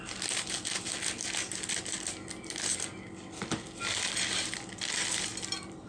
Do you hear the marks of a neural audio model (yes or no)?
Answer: no